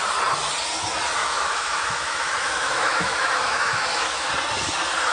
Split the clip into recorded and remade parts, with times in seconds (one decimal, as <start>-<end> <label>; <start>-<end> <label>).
0.0-1.2 recorded; 1.2-4.3 remade; 4.3-5.1 recorded